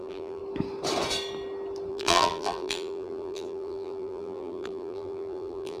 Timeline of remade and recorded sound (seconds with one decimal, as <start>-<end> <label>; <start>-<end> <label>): 0.0-0.4 remade; 0.4-1.9 recorded; 1.9-5.8 remade